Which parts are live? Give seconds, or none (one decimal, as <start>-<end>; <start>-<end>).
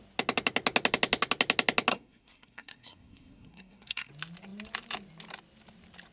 0.0-1.9; 4.1-6.1